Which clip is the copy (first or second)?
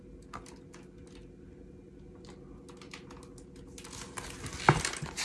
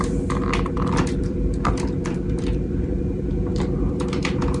second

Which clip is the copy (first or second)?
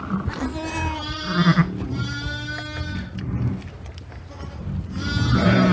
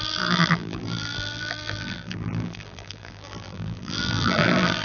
second